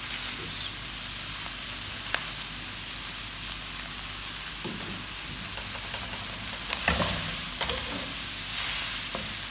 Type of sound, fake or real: real